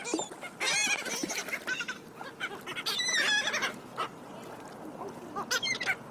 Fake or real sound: real